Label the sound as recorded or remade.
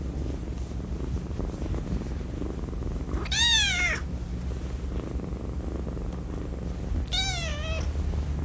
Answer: recorded